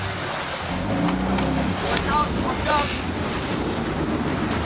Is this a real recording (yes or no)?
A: yes